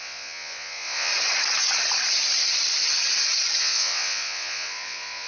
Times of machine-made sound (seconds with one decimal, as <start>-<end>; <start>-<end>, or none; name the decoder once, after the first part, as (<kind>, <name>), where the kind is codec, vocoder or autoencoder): 0.0-1.1 (vocoder, Vocos); 3.6-5.3